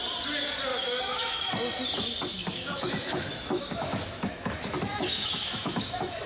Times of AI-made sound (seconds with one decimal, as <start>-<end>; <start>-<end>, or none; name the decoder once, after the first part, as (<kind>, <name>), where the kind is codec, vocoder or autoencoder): 0.7-1.5 (autoencoder, DAC-VAE); 2.3-6.3